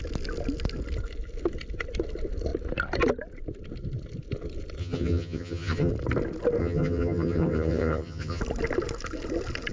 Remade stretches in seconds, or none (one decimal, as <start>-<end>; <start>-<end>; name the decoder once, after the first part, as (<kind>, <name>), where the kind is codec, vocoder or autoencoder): 4.8-5.9 (vocoder, HiFi-GAN); 6.6-8.4